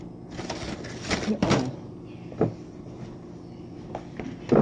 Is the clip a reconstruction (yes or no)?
no